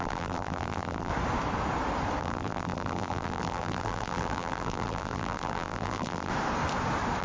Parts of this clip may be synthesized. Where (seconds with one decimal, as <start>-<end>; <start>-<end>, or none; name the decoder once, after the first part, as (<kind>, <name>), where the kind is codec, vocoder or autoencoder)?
0.0-1.1 (vocoder, BigVGAN v2); 2.2-6.3

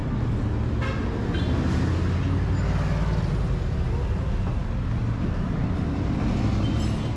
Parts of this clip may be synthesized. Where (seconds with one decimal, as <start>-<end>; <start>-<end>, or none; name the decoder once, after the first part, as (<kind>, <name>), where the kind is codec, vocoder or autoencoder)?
none

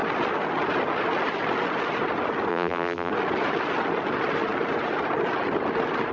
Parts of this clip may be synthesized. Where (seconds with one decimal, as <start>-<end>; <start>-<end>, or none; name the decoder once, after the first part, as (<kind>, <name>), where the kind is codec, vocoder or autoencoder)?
2.5-3.1 (vocoder, BigVGAN v2)

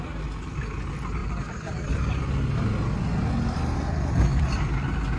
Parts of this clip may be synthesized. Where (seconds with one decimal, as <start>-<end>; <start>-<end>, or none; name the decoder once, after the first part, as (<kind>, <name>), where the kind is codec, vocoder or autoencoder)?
none

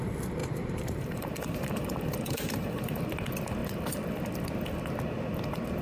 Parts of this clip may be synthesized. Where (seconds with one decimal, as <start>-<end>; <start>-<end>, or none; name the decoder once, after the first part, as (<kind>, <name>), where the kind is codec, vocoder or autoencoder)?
0.4-3.0 (vocoder, BigVGAN v2)

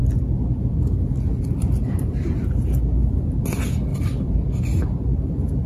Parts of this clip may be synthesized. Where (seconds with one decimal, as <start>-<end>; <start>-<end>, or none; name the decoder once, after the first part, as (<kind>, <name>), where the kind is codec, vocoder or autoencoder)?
1.3-2.1 (vocoder, BigVGAN v2); 3.9-5.7